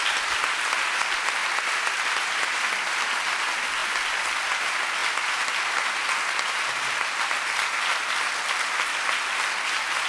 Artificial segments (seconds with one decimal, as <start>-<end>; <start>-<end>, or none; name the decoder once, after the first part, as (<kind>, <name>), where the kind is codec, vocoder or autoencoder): none